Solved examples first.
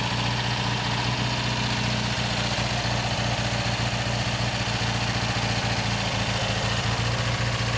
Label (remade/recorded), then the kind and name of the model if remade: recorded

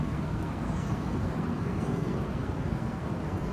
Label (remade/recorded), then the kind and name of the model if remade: remade, codec, SNAC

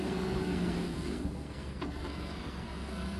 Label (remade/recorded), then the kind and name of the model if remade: remade, codec, SNAC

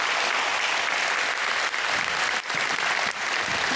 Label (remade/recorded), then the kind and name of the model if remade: recorded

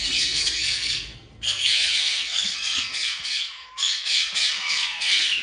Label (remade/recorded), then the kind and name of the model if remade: remade, codec, SNAC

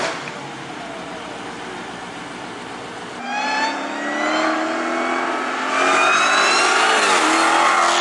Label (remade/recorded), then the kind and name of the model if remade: recorded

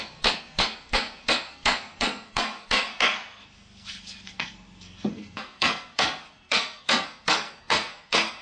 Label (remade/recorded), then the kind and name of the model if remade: remade, codec, SNAC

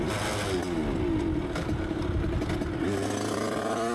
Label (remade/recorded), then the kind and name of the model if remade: recorded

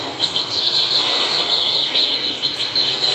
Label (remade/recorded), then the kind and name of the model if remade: remade, codec, SNAC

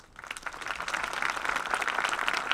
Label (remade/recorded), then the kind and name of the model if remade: recorded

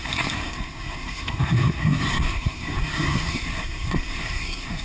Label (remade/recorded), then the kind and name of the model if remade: remade, codec, SNAC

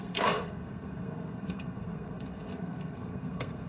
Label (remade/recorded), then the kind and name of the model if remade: remade, codec, SNAC